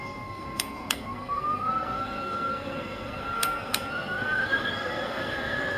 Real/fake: fake